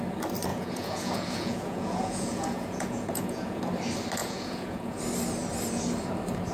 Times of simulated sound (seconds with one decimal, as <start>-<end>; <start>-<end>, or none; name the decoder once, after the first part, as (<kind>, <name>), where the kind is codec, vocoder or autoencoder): 0.5-3.6 (vocoder, Vocos); 4.2-5.0